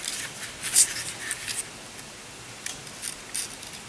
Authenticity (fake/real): real